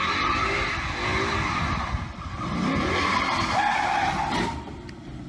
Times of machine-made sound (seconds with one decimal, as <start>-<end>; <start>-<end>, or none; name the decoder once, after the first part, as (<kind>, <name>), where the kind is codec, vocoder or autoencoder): none